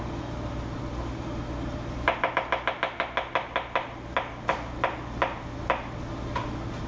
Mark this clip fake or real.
real